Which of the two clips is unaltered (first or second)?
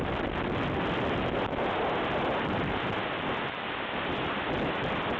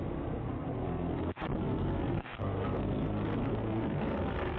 first